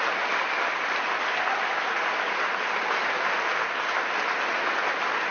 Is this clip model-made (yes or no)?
no